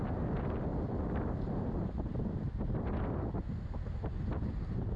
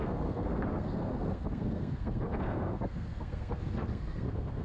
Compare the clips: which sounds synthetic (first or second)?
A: second